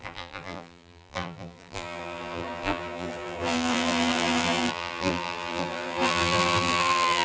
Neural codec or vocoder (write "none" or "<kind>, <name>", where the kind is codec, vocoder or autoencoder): vocoder, BigVGAN v2